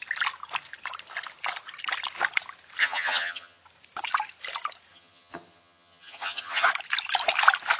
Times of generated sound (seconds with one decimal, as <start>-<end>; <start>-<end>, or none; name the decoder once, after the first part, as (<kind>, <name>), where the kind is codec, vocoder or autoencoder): 2.8-3.6 (vocoder, HiFi-GAN); 4.9-6.7